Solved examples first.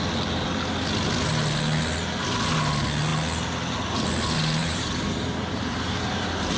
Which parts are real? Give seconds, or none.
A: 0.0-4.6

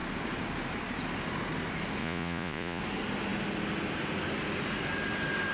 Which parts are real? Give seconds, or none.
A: 0.0-2.0; 2.8-5.5

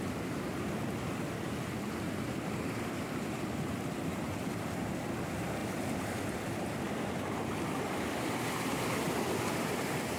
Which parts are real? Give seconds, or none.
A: none

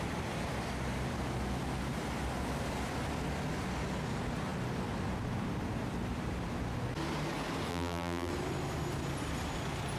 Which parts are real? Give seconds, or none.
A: 0.0-7.7; 8.3-10.0